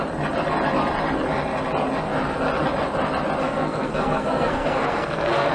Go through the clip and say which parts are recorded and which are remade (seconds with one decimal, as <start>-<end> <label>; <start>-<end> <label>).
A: 0.0-3.4 recorded; 3.4-5.5 remade